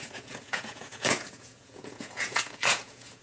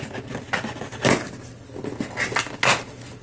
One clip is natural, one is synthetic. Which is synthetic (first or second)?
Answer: first